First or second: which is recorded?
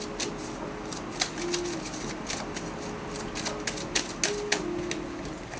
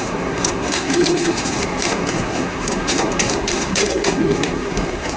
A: first